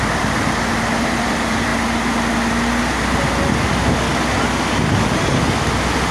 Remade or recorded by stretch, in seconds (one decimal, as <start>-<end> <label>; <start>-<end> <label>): 0.0-1.7 remade; 1.7-5.4 recorded; 5.4-6.1 remade